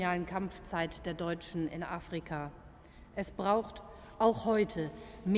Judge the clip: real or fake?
real